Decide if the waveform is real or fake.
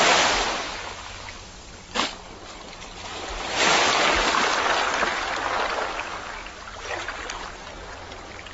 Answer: real